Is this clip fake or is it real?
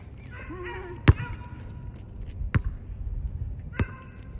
real